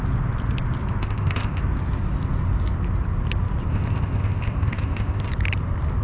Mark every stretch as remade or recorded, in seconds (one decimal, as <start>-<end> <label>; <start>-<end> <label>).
0.0-1.0 recorded; 1.0-1.6 remade; 1.6-3.7 recorded; 3.7-5.3 remade; 5.3-6.0 recorded